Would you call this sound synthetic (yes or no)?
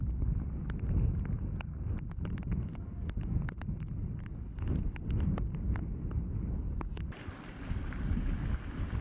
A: no